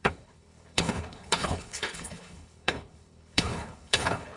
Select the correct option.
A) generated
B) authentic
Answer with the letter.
A